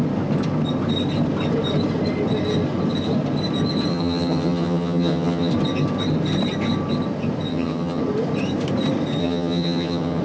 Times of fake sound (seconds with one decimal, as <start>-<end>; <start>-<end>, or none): 3.9-5.5; 7.5-8.0; 9.2-10.2